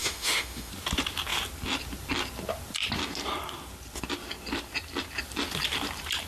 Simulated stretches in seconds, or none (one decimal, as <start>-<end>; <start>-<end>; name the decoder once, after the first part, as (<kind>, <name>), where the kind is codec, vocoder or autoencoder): 0.0-0.7 (autoencoder, DAC-VAE)